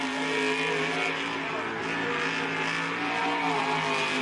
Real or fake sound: real